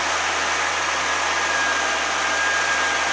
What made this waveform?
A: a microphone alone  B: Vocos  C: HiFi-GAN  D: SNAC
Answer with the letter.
A